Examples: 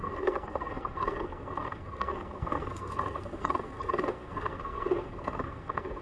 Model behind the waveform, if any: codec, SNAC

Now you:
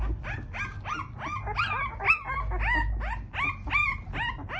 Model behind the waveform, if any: none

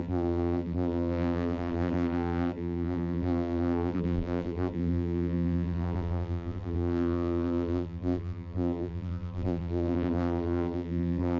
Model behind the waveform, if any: vocoder, BigVGAN v2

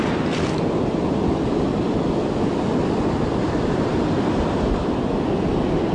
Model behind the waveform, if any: none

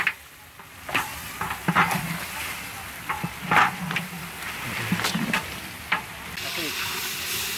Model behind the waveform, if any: none